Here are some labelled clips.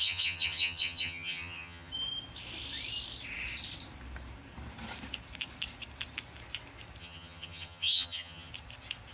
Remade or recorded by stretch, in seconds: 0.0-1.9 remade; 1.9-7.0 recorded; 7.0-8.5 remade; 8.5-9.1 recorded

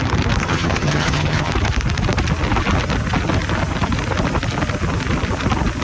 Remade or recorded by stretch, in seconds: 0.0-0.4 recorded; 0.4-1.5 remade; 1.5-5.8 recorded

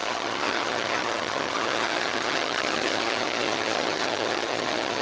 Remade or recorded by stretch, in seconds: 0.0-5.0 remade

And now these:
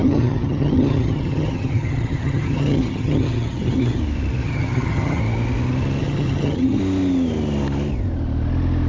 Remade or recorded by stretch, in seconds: 0.0-4.0 remade; 4.0-4.4 recorded; 4.4-5.2 remade; 5.2-6.0 recorded; 6.0-6.8 remade; 6.8-8.9 recorded

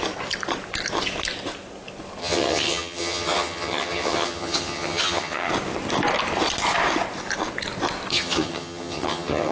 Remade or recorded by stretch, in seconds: 0.0-2.2 recorded; 2.2-5.5 remade; 5.5-8.1 recorded; 8.1-9.5 remade

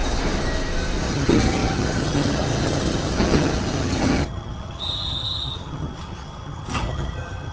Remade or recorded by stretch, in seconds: 0.0-1.0 recorded; 1.0-7.5 remade